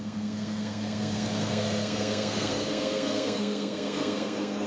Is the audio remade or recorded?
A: remade